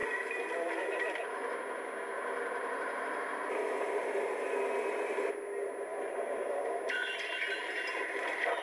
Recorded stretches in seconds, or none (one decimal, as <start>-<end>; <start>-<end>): 0.0-8.6